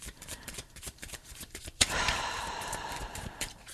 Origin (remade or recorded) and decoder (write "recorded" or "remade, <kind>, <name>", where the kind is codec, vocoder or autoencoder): remade, vocoder, BigVGAN v2